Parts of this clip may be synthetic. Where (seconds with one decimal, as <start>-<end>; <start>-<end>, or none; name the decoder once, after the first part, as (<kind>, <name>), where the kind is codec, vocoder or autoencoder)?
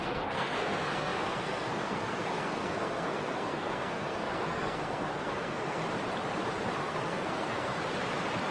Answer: 0.0-5.8 (codec, SNAC); 6.8-7.8